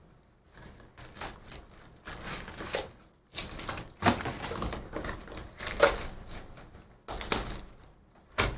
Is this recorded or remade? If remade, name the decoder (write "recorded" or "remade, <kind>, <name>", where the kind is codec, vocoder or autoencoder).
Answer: recorded